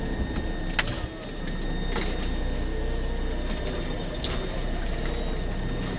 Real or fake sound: real